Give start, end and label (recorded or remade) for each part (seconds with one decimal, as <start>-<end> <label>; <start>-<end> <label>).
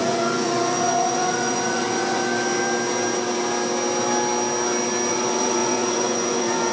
0.0-2.2 remade; 2.2-5.1 recorded; 5.1-6.7 remade